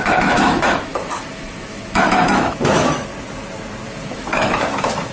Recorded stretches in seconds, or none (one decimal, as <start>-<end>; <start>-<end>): 3.1-3.9